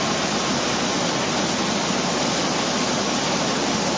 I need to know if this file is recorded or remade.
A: recorded